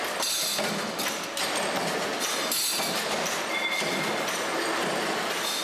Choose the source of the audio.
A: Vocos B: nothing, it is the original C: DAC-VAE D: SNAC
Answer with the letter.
B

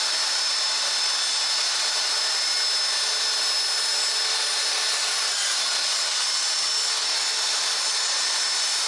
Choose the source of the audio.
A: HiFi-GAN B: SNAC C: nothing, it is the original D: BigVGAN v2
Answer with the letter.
C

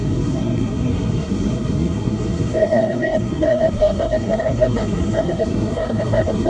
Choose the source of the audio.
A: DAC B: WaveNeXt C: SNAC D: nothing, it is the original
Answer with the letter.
C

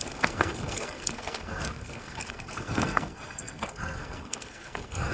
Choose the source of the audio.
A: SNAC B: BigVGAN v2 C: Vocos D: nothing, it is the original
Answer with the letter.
A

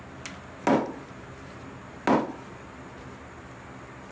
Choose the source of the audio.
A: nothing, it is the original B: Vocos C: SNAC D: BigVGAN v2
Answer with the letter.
A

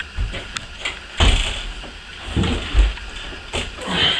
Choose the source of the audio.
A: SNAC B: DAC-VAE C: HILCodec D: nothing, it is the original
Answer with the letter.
D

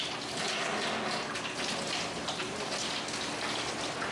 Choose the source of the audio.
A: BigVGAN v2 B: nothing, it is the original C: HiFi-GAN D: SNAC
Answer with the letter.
B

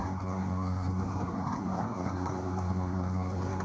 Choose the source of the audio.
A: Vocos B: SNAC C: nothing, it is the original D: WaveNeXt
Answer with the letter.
B